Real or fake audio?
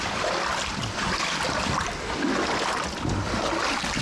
real